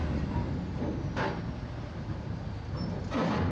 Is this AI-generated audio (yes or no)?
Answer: no